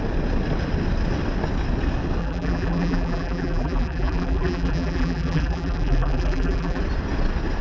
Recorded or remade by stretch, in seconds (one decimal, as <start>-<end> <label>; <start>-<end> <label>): 0.0-2.2 recorded; 2.2-6.8 remade; 6.8-7.6 recorded